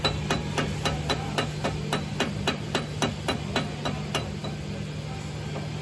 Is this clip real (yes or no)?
yes